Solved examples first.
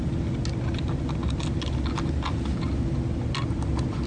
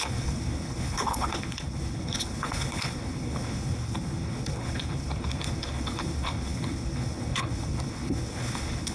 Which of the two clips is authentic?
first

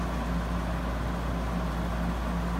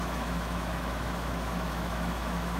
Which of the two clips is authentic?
first